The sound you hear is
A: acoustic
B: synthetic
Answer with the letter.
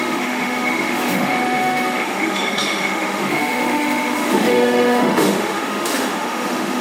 B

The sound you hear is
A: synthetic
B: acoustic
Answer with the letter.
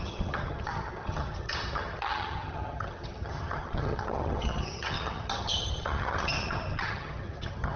A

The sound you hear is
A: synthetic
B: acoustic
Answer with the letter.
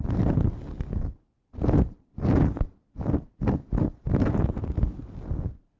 B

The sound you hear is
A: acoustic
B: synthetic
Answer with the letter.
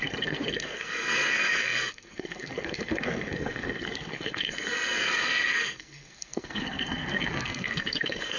B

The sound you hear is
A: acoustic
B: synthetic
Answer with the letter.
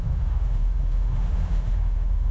B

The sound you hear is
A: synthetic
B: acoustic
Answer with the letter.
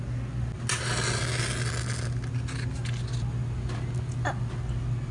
B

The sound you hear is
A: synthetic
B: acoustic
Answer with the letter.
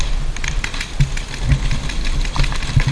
B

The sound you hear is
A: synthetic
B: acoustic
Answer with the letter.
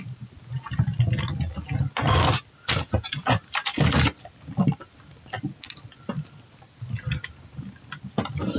B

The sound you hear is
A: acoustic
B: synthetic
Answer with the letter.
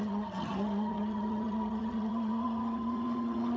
B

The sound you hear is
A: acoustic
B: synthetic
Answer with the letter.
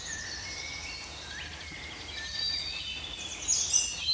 A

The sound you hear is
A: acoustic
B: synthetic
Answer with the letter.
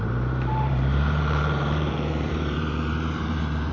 B